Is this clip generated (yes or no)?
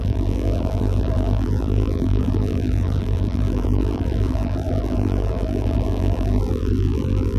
yes